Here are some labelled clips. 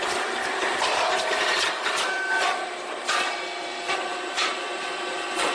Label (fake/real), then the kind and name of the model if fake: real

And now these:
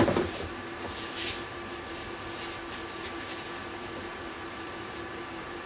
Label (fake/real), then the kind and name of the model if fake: fake, vocoder, BigVGAN v2